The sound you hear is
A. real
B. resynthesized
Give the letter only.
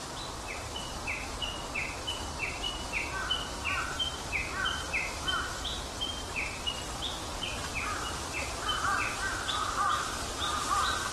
B